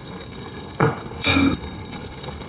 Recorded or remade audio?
remade